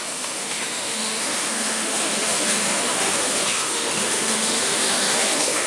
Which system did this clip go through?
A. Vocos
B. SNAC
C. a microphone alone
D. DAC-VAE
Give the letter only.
D